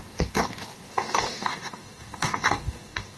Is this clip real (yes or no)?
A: no